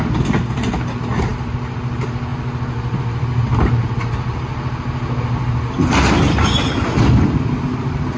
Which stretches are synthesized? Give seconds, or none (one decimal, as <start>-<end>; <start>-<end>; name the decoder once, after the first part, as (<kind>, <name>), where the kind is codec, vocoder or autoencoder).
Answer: none